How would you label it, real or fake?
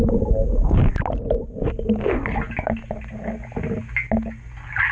real